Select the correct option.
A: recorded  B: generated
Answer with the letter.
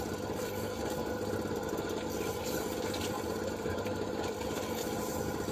A